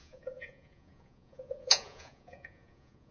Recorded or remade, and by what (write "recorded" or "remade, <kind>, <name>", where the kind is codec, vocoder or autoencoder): remade, vocoder, Vocos